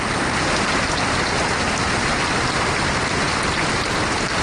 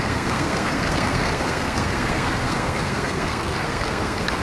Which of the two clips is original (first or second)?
first